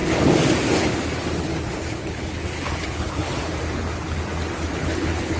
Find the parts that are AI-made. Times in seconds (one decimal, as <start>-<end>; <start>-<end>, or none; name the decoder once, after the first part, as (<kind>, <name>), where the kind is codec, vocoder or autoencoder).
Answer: 1.9-3.3 (codec, HILCodec); 4.7-5.4